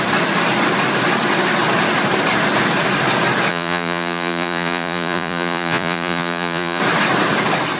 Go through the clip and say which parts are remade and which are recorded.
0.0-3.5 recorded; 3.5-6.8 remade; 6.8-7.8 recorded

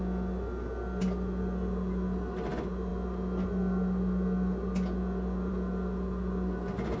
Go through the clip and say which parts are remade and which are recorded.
0.0-7.0 recorded

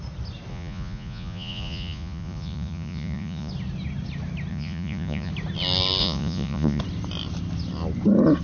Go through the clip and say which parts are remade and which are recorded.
0.0-0.5 recorded; 0.5-3.5 remade; 3.5-4.5 recorded; 4.5-5.3 remade; 5.3-6.0 recorded; 6.0-6.8 remade; 6.8-8.4 recorded

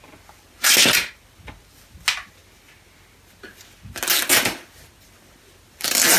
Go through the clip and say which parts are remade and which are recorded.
0.0-6.2 recorded

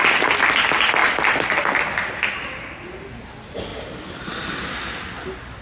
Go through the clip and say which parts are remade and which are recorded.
0.0-5.6 recorded

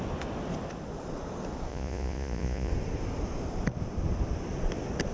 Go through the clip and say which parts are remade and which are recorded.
0.0-1.7 recorded; 1.7-2.7 remade; 2.7-5.1 recorded

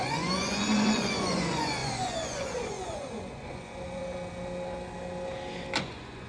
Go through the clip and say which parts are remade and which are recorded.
0.0-4.0 remade; 4.0-5.8 recorded; 5.8-6.3 remade